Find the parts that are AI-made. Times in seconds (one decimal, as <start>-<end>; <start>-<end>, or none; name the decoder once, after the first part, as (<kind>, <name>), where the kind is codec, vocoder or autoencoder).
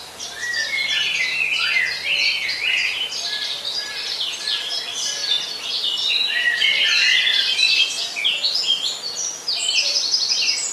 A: 0.0-1.5 (vocoder, BigVGAN v2); 2.5-5.2; 5.7-7.3; 9.6-10.7